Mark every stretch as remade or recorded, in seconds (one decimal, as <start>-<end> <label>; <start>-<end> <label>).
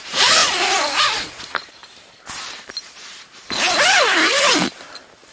0.0-1.8 remade; 1.8-5.3 recorded